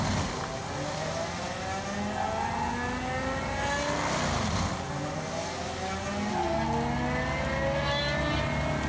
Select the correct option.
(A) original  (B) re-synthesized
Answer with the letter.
A